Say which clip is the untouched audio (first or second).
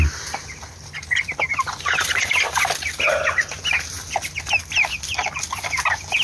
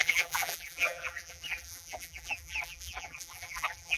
first